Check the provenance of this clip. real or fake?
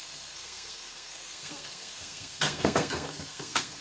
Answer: fake